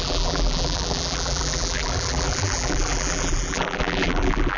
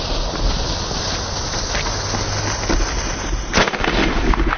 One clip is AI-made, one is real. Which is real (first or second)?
second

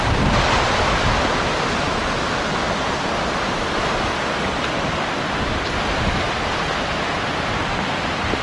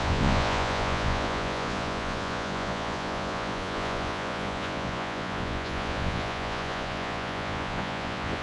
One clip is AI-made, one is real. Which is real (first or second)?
first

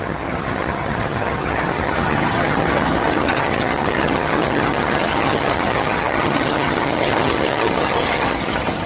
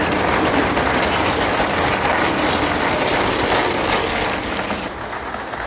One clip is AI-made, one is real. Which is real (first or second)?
second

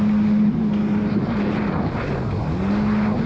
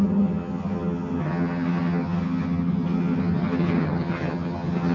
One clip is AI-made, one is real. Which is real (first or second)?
first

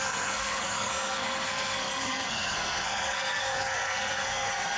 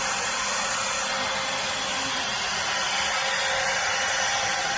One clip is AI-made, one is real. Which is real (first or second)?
second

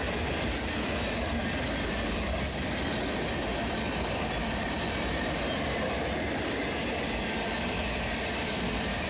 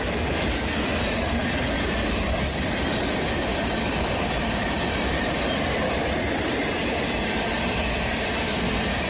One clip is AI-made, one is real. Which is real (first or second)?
first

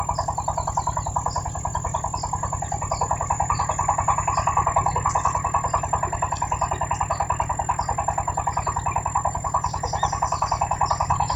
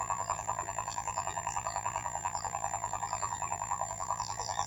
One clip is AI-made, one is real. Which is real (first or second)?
first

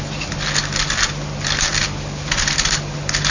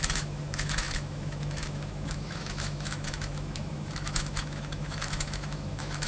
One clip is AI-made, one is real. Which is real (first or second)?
first